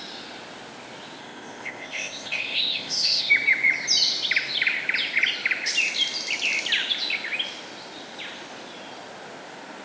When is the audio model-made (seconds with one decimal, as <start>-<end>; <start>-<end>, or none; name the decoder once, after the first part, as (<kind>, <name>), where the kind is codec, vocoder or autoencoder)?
1.2-3.3 (codec, ZipCodec)

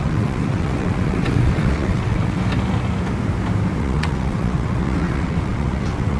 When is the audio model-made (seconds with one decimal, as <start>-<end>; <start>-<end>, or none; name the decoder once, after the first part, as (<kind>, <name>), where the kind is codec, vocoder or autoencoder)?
0.0-2.4 (vocoder, WaveNeXt); 3.8-6.2

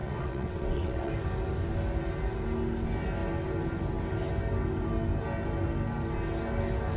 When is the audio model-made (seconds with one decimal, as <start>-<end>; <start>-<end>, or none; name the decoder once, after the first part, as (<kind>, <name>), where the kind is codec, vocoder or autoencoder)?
0.0-1.1 (vocoder, WaveNeXt)

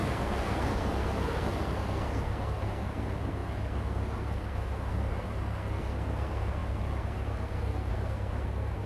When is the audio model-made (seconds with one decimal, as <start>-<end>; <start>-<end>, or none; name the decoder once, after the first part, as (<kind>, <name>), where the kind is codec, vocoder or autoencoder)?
0.0-8.9 (codec, SNAC)

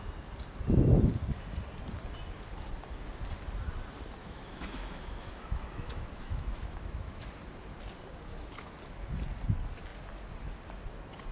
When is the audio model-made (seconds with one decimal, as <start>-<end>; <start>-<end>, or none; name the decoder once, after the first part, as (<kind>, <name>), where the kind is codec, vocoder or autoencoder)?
4.2-7.3 (autoencoder, DAC-VAE); 8.3-8.8

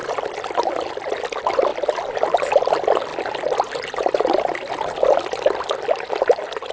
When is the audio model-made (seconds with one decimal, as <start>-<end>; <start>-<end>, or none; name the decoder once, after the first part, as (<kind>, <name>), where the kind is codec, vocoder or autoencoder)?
1.7-2.4 (vocoder, BigVGAN v2); 3.1-4.2

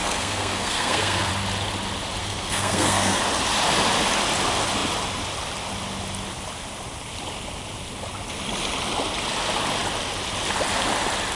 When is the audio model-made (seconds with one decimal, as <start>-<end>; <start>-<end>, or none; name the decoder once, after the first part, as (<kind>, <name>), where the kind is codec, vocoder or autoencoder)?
0.0-1.3 (codec, SNAC); 2.2-3.2

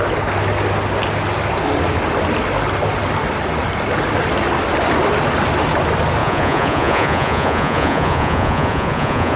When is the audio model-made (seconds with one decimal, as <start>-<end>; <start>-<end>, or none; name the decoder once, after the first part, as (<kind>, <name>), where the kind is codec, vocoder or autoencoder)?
6.2-9.4 (vocoder, Vocos)